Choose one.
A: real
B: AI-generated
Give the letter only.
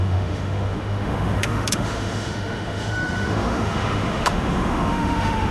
B